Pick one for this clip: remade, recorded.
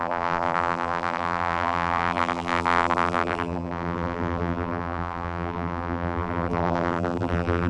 remade